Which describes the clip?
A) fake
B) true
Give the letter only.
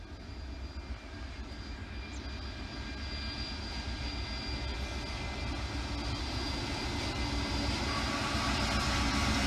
B